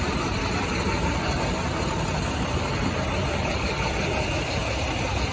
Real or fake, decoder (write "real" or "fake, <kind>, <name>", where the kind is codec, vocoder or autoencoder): real